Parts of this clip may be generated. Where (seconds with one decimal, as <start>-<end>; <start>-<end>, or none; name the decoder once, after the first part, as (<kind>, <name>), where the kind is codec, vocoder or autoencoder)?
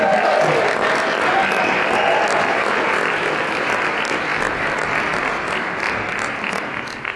none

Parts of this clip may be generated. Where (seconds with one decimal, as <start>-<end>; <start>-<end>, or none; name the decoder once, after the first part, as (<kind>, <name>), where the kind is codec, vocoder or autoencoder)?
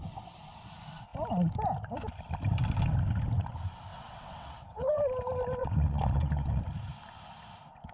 3.9-5.0 (vocoder, WaveNeXt); 5.6-6.6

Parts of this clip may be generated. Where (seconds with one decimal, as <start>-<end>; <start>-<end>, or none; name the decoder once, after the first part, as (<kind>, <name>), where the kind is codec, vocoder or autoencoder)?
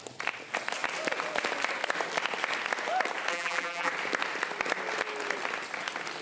3.3-3.9 (vocoder, BigVGAN v2)